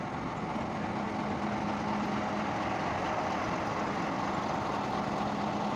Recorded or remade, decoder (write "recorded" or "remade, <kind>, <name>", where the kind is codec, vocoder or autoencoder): recorded